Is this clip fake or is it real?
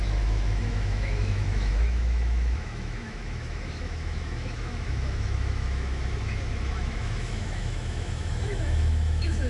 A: fake